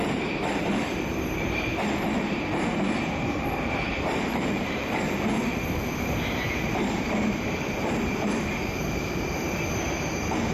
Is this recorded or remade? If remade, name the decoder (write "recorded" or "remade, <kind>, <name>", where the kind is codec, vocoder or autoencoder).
remade, vocoder, BigVGAN v2